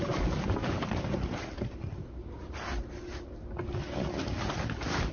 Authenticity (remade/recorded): recorded